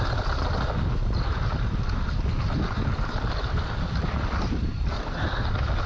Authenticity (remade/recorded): recorded